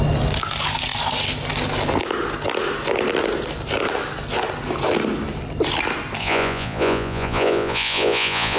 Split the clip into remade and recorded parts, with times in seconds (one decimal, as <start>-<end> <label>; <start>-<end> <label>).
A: 0.0-6.2 recorded; 6.2-8.6 remade